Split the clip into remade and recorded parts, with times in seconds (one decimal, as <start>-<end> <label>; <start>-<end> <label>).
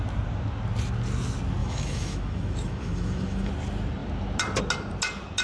0.0-1.6 recorded; 1.6-3.5 remade; 3.5-5.4 recorded